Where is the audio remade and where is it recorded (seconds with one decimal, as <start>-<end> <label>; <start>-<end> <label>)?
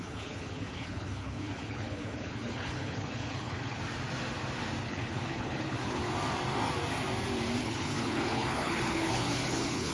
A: 0.0-3.8 remade; 3.8-4.8 recorded; 4.8-6.0 remade; 6.0-7.6 recorded; 7.6-9.9 remade